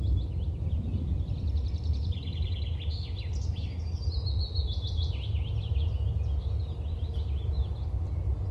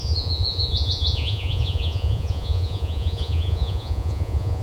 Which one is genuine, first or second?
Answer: first